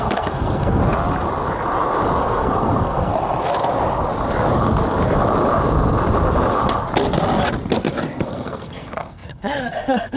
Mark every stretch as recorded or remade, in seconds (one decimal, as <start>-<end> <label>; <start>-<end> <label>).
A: 0.0-0.8 remade; 0.8-2.2 recorded; 2.2-3.1 remade; 3.1-8.3 recorded; 8.3-10.2 remade